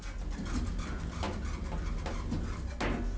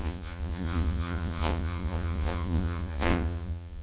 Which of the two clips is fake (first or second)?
second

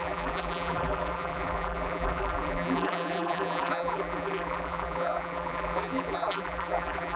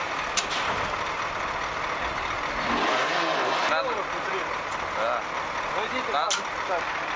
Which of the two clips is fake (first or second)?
first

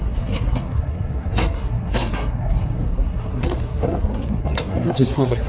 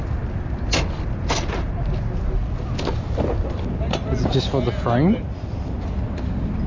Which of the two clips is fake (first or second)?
first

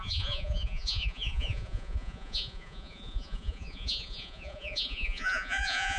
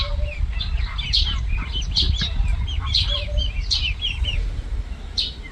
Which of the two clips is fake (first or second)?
first